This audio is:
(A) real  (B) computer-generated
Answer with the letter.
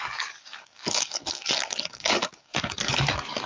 B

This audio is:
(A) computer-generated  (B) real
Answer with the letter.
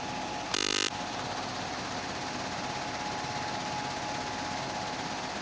B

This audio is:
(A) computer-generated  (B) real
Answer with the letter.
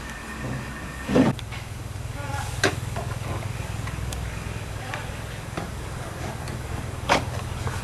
A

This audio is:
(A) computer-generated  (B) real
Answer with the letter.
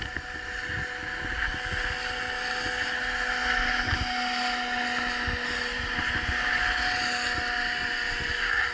B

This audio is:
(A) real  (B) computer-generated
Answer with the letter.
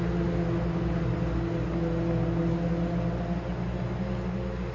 A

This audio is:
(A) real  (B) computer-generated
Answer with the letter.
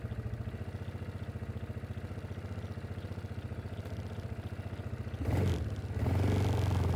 A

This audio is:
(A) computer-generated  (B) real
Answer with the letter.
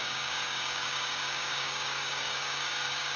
A